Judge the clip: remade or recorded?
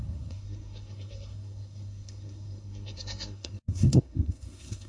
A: remade